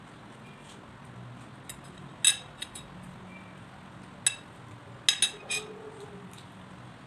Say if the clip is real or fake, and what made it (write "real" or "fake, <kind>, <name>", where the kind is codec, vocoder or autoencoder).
real